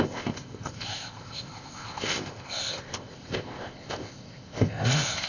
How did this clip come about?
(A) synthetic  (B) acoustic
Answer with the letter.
A